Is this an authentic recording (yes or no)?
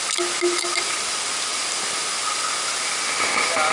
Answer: yes